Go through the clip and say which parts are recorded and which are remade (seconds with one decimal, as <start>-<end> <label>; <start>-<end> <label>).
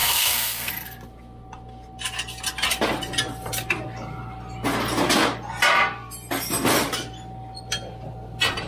0.0-0.7 remade; 0.7-8.7 recorded